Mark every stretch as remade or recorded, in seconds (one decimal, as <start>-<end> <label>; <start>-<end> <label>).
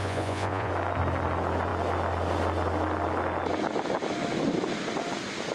0.0-0.7 remade; 0.7-5.5 recorded